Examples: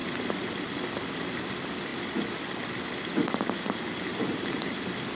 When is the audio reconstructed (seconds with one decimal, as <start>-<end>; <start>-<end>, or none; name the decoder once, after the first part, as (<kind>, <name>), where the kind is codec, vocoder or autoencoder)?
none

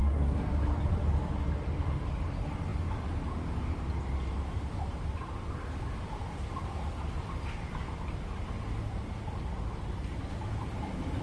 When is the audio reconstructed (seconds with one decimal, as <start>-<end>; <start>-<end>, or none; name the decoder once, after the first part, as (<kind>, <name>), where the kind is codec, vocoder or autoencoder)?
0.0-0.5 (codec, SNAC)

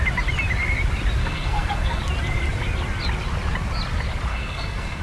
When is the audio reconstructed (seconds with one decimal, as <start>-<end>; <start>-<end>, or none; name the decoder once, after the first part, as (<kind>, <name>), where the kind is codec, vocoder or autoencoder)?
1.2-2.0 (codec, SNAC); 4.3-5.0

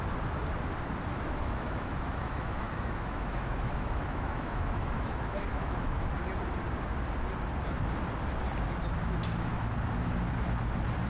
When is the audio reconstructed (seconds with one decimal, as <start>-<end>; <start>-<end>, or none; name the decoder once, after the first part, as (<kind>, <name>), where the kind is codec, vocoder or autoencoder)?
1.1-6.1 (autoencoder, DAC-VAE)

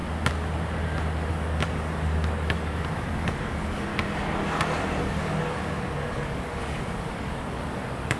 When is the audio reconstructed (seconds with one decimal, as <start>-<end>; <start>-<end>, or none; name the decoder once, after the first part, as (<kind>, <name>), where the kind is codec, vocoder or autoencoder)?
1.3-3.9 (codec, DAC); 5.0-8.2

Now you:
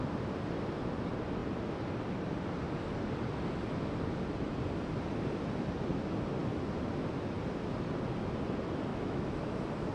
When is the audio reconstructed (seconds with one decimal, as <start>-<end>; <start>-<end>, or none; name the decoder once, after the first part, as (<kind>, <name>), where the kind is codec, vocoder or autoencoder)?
8.9-9.9 (autoencoder, DAC-VAE)

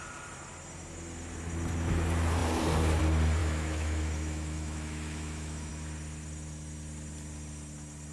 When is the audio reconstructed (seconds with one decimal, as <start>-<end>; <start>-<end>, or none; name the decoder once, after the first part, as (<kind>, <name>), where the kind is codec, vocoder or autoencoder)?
3.4-5.7 (autoencoder, DAC-VAE)